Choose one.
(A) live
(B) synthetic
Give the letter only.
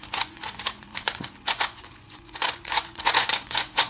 B